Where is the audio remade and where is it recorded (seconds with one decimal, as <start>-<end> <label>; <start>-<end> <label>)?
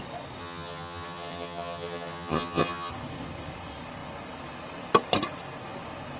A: 0.0-0.4 recorded; 0.4-2.9 remade; 2.9-6.2 recorded